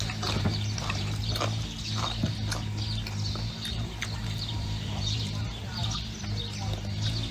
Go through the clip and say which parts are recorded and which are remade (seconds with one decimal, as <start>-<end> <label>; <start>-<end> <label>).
0.0-0.5 recorded; 0.5-1.3 remade; 1.3-3.8 recorded; 3.8-6.2 remade; 6.2-7.3 recorded